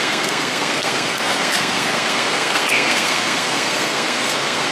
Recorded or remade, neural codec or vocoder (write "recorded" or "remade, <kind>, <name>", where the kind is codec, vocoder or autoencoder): remade, codec, SNAC